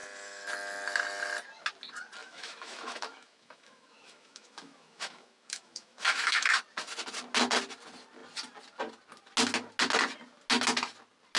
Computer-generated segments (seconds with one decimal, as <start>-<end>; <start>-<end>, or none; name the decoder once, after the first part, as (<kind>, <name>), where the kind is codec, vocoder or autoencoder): 2.2-6.6 (autoencoder, DAC-VAE)